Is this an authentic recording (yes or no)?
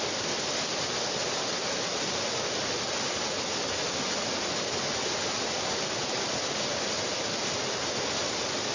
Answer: yes